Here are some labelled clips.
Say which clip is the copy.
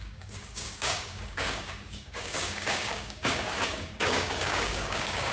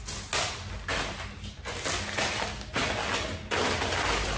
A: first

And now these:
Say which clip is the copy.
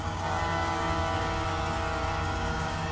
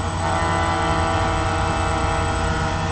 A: first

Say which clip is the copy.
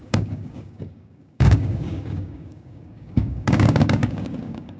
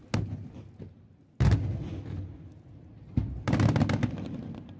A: first